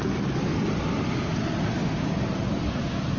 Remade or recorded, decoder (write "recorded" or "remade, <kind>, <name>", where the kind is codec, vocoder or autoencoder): recorded